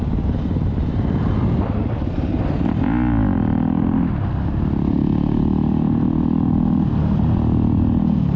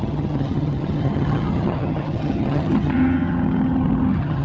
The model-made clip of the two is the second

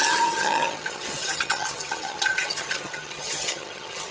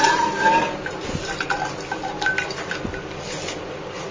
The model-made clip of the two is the first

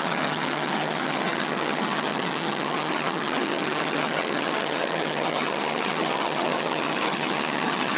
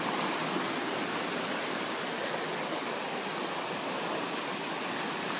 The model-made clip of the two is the first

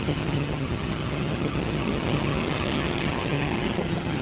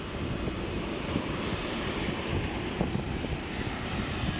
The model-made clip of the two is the first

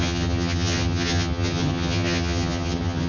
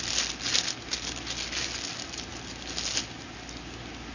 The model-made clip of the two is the first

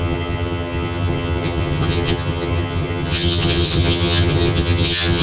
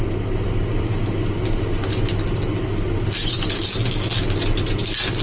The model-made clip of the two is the first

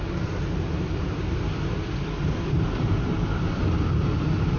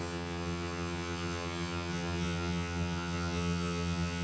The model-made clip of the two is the second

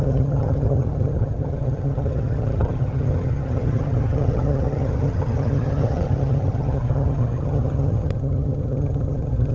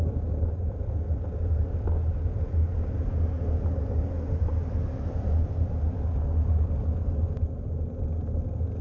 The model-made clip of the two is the first